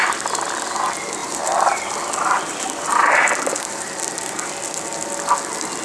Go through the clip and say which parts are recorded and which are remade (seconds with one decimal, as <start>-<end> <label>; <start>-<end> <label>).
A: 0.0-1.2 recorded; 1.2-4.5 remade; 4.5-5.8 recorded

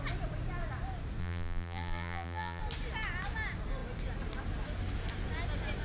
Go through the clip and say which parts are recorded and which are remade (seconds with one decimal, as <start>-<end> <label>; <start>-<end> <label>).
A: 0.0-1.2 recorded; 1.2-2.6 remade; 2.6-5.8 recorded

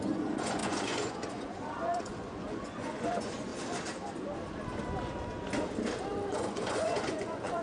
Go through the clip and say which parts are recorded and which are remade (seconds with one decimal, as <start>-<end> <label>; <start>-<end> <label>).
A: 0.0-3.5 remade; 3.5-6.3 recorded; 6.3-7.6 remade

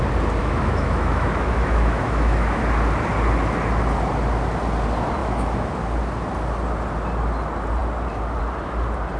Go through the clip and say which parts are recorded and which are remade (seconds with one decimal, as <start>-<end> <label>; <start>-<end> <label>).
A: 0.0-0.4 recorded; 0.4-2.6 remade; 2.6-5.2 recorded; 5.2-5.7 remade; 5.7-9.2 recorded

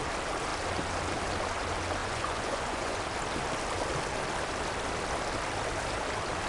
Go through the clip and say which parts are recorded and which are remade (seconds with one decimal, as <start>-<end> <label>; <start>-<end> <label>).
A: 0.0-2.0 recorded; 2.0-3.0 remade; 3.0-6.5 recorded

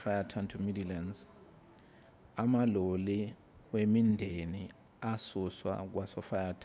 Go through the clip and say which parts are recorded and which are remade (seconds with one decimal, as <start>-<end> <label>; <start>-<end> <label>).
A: 0.0-6.6 remade